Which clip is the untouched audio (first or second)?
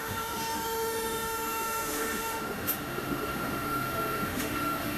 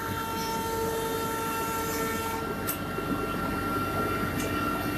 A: second